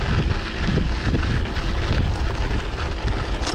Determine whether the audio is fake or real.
real